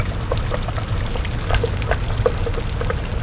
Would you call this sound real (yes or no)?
yes